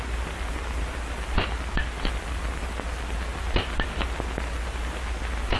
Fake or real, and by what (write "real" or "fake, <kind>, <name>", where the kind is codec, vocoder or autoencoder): real